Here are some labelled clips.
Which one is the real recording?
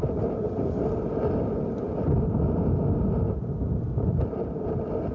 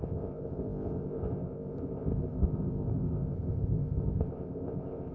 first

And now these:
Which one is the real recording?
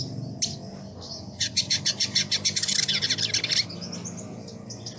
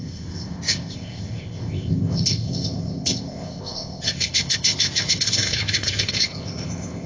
first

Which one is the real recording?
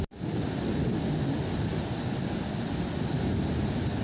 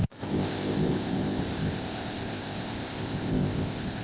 first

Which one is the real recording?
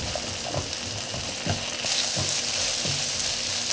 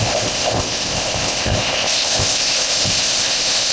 first